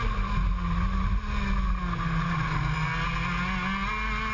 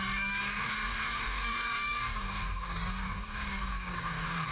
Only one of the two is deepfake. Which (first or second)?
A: second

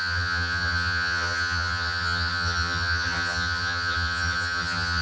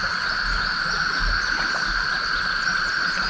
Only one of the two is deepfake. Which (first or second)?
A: first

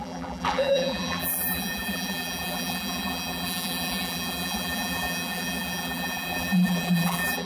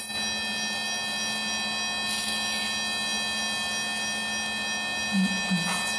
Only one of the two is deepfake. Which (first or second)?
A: first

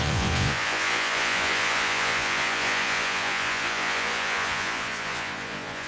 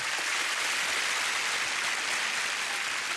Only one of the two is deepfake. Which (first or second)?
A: first